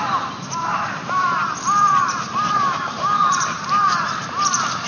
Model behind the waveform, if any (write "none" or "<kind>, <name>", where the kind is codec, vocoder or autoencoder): vocoder, BigVGAN v2